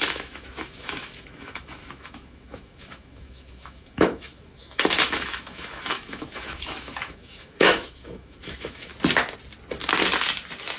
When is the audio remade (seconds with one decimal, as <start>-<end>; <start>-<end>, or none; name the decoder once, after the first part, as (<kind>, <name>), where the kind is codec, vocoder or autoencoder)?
0.0-8.9 (autoencoder, DAC-VAE)